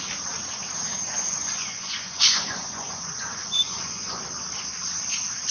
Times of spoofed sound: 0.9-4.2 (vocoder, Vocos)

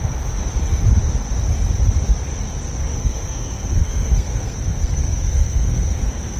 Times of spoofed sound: 0.0-0.4 (codec, SNAC); 2.8-6.4

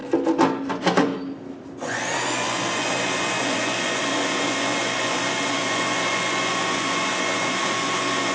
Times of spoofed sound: 0.7-1.1 (vocoder, Vocos); 1.8-8.3

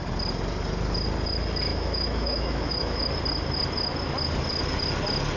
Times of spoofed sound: 1.7-3.0 (autoencoder, DAC-VAE)